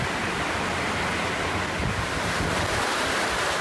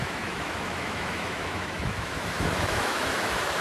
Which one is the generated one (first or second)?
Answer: second